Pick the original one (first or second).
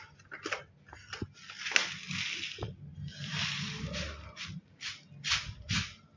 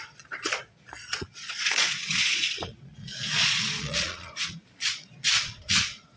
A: first